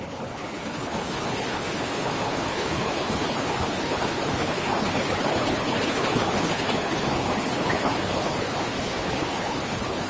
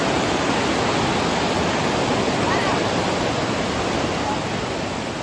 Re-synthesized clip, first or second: first